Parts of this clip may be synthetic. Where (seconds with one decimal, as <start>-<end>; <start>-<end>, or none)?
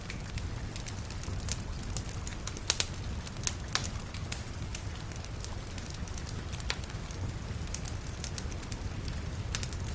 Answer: none